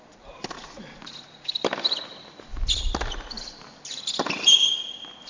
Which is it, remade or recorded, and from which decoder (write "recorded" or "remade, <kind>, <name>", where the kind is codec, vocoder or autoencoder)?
recorded